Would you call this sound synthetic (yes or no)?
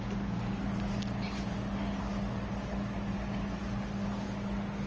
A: no